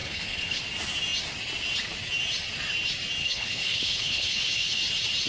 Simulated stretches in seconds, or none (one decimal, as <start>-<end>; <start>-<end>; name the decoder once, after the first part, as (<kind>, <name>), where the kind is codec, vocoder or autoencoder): 0.0-0.6 (codec, HILCodec); 3.2-4.8

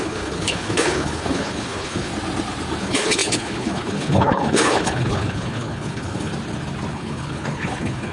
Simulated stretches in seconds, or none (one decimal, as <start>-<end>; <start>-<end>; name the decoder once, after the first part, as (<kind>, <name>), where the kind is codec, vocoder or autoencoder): 0.0-2.1 (codec, HILCodec); 2.8-6.3; 6.9-8.1

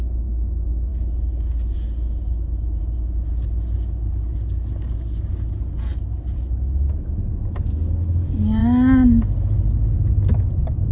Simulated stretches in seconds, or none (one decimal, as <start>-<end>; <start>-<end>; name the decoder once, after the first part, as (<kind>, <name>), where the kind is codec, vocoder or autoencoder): none

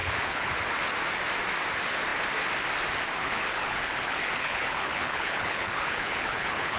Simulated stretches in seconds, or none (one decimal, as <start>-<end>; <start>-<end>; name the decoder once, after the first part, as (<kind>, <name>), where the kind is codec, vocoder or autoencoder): 0.0-0.6 (codec, HILCodec); 3.2-6.8